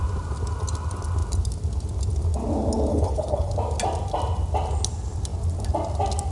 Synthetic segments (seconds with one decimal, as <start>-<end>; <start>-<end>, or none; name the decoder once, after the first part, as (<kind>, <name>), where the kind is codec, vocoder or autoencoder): 2.9-3.5 (codec, HILCodec)